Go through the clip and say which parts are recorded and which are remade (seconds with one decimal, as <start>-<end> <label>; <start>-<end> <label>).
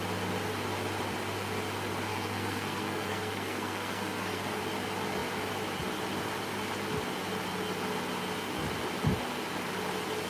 0.0-2.1 recorded; 2.1-4.6 remade; 4.6-10.3 recorded